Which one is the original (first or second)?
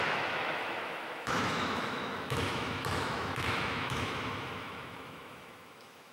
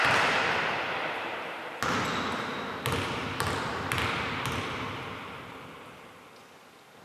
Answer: second